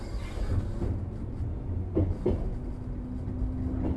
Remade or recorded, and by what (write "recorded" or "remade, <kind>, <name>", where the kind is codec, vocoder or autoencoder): recorded